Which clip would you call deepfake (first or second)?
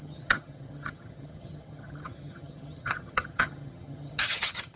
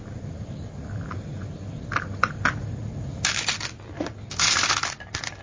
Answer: first